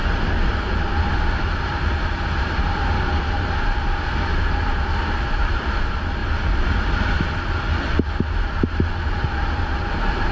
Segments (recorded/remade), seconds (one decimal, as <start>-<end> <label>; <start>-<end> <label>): 0.0-0.8 remade; 0.8-6.2 recorded; 6.2-7.1 remade; 7.1-10.3 recorded